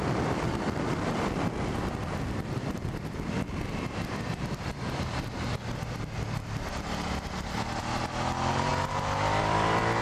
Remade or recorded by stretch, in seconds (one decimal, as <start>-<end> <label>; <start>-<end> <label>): 0.0-8.7 remade; 8.7-9.4 recorded; 9.4-10.0 remade